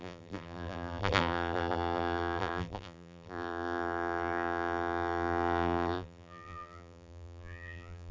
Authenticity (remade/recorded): remade